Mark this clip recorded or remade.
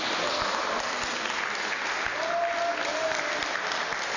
recorded